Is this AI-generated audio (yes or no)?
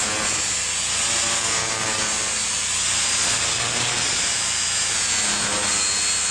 no